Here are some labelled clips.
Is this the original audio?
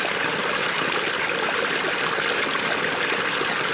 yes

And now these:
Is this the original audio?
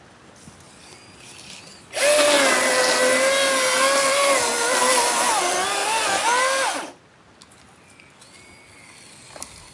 yes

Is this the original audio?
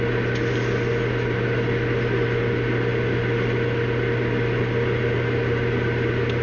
yes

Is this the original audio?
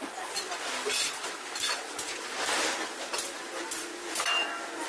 yes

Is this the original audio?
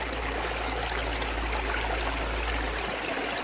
yes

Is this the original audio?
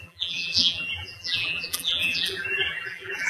no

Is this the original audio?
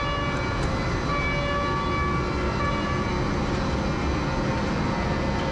yes